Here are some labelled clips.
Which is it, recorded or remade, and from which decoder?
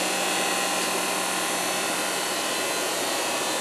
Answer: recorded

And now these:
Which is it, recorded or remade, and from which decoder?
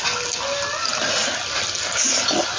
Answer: recorded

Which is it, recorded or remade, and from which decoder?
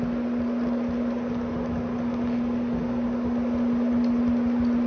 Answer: recorded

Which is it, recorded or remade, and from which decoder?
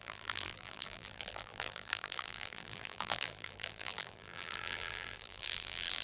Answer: remade, vocoder, BigVGAN v2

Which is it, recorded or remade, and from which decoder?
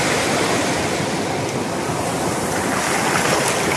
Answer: recorded